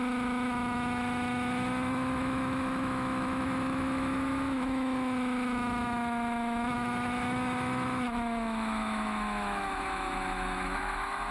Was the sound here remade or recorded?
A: remade